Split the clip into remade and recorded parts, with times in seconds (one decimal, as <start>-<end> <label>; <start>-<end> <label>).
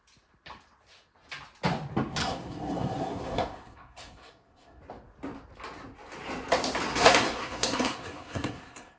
0.0-2.2 recorded; 2.2-4.8 remade; 4.8-6.9 recorded; 6.9-9.0 remade